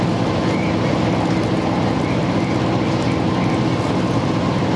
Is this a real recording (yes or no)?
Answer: yes